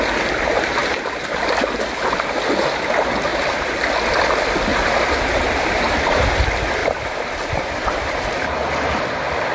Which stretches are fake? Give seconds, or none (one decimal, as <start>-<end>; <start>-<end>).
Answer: 0.8-1.4; 3.3-3.9; 4.7-6.3; 6.8-8.5

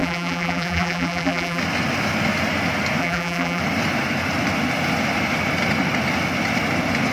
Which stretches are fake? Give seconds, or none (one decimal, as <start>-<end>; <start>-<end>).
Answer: 0.0-1.6; 3.0-3.6